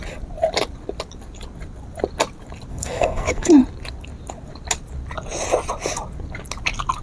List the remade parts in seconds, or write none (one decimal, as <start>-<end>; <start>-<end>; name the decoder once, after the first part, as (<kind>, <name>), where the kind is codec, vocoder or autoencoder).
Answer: 2.7-3.5 (codec, SNAC)

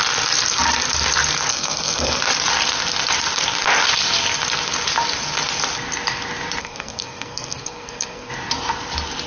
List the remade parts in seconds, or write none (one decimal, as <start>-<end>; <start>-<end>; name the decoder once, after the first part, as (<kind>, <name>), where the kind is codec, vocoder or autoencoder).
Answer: 1.5-2.2 (codec, SNAC); 6.6-8.3

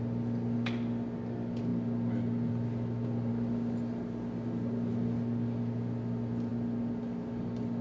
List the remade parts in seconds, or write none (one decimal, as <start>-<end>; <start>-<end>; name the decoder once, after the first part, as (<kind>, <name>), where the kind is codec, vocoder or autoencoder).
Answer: none

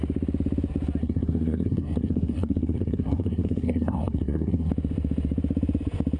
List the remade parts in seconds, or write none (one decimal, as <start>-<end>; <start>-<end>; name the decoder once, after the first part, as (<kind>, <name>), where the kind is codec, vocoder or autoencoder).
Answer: 1.0-4.7 (codec, SNAC)

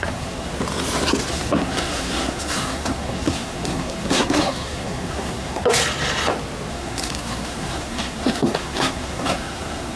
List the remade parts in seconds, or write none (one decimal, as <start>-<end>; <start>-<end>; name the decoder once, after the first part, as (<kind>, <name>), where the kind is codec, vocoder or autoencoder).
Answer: 0.0-0.5 (codec, SNAC); 1.3-5.8; 6.7-10.0